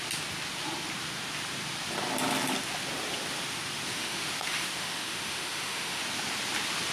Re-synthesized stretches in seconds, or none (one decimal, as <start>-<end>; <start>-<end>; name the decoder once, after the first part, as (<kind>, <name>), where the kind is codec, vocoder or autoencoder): 3.9-6.0 (autoencoder, DAC-VAE)